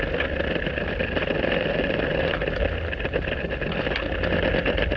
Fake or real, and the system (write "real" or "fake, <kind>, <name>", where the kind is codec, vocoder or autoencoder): real